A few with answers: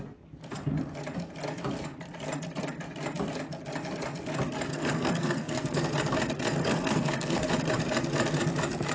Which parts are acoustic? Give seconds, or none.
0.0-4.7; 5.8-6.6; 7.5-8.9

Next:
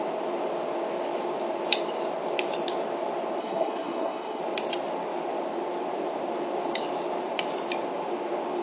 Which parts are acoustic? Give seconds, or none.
0.0-3.4; 4.4-8.6

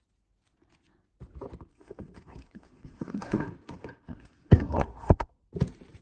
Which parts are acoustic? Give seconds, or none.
0.0-1.7; 5.3-6.0